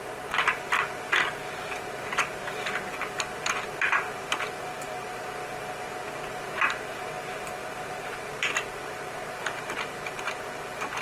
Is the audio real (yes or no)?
yes